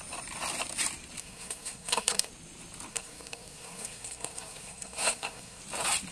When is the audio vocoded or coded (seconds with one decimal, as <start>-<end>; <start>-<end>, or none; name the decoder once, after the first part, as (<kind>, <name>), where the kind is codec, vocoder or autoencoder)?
1.2-2.3 (codec, SNAC); 2.9-5.6